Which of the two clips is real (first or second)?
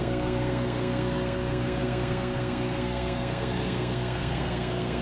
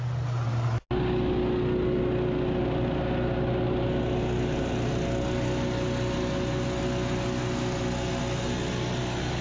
second